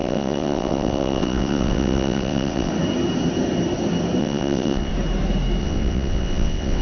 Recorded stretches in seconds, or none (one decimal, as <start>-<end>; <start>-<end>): 2.7-4.2; 4.9-5.6